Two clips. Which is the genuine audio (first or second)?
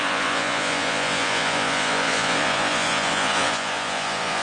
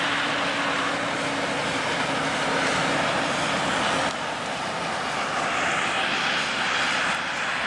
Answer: second